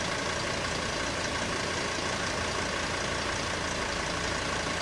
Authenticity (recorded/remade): recorded